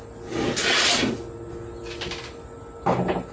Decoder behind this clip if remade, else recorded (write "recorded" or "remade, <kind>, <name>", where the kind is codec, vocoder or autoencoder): recorded